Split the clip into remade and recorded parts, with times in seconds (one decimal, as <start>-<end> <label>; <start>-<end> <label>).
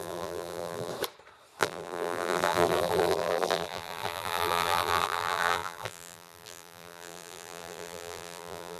0.0-0.9 remade; 0.9-1.6 recorded; 1.6-8.8 remade